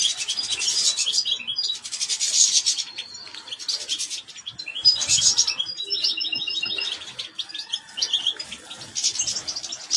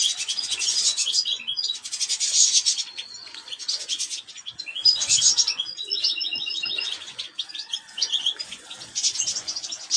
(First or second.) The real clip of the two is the first